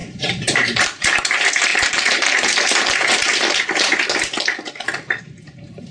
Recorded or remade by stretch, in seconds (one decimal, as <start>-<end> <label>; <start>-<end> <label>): 0.0-1.7 remade; 1.7-5.2 recorded; 5.2-5.9 remade